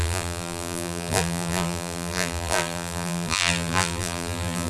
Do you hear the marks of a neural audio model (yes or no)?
yes